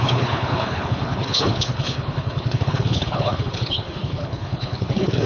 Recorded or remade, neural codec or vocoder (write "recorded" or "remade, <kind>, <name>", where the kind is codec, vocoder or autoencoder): remade, codec, HILCodec